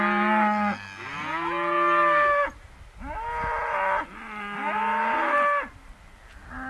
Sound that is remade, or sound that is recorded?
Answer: recorded